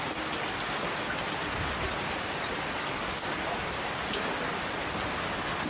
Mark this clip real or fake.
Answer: real